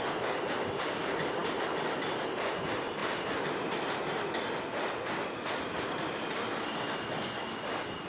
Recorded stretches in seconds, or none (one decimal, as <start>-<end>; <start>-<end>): 0.0-8.1